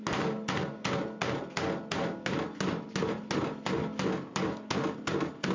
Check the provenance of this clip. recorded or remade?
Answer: recorded